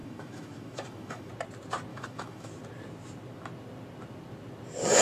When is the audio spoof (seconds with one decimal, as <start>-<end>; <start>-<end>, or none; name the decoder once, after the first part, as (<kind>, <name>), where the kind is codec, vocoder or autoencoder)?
0.0-1.3 (autoencoder, DAC-VAE); 1.9-2.5